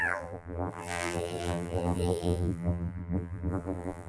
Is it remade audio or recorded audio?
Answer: remade